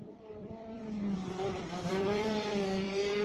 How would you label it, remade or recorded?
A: remade